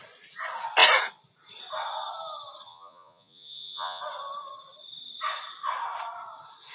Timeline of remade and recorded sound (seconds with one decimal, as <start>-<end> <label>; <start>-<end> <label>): 0.0-2.7 recorded; 2.7-4.0 remade; 4.0-6.7 recorded